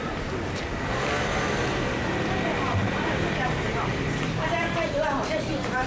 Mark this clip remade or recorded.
remade